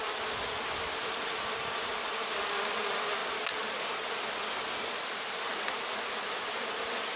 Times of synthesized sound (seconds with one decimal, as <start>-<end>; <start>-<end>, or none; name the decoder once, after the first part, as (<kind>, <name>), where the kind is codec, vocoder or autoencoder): none